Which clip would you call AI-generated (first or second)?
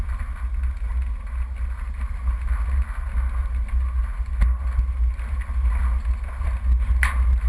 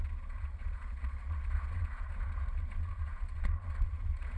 second